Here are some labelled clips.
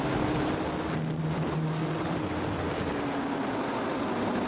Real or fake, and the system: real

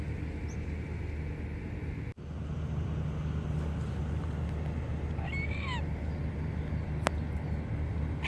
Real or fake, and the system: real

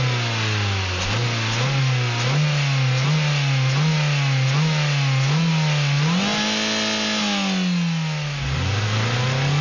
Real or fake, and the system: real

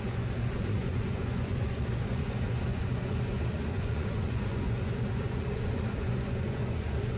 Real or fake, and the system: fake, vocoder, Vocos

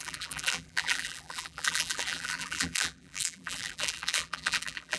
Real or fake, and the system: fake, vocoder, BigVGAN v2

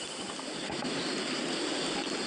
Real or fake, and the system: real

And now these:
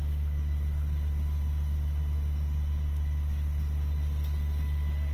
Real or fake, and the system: real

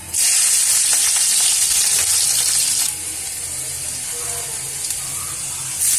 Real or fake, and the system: real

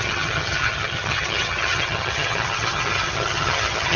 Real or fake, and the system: fake, vocoder, HiFi-GAN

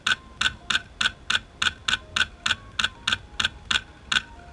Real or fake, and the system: real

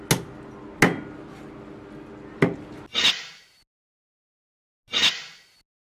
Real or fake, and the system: real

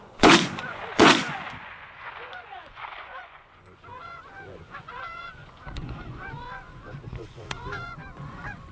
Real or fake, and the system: fake, vocoder, Vocos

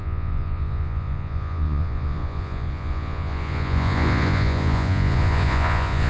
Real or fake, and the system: fake, vocoder, Vocos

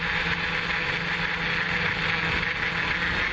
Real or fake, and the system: real